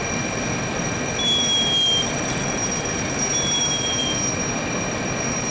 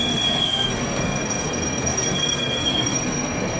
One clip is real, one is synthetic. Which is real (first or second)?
first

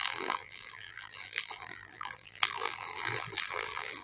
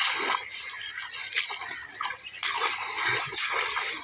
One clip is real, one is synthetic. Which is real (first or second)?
second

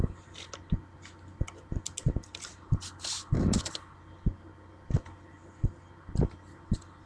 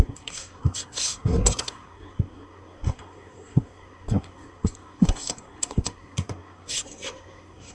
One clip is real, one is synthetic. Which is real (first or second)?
first